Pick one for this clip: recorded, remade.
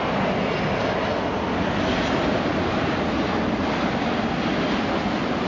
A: recorded